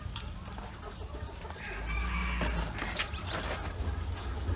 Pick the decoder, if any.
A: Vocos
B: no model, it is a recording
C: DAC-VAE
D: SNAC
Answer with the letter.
B